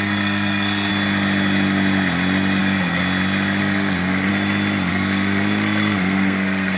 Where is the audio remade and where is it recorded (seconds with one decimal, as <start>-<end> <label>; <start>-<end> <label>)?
0.0-0.9 remade; 0.9-2.6 recorded; 2.6-3.0 remade; 3.0-3.6 recorded; 3.6-4.3 remade; 4.3-4.9 recorded; 4.9-6.8 remade